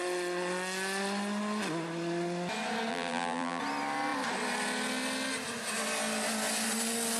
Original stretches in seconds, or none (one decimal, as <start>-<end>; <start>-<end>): 0.0-2.9; 3.6-7.2